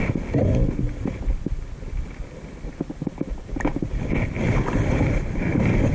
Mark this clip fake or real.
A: real